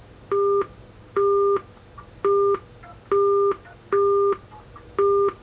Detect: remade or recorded recorded